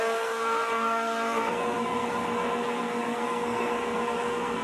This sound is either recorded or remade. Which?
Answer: remade